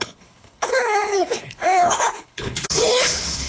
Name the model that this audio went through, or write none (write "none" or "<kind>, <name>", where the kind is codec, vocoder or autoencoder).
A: codec, HILCodec